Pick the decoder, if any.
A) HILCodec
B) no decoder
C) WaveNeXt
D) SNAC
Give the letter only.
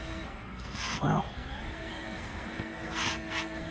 D